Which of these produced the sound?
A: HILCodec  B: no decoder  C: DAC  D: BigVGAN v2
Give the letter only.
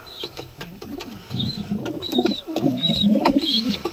C